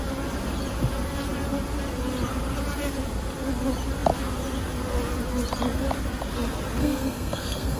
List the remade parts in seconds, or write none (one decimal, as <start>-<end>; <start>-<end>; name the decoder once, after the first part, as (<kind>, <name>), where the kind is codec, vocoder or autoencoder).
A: 6.8-7.8 (codec, SNAC)